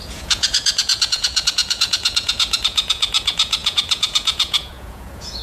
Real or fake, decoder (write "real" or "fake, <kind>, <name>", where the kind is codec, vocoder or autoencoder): fake, vocoder, Vocos